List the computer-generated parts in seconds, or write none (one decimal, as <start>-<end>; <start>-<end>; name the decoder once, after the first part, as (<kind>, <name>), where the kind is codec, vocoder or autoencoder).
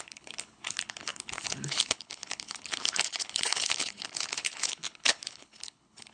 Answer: 0.0-6.1 (codec, HILCodec)